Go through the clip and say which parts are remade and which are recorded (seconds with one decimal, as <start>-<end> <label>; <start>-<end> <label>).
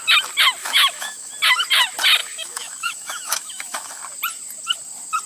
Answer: 0.0-0.6 recorded; 0.6-1.3 remade; 1.3-2.2 recorded; 2.2-4.0 remade; 4.0-5.3 recorded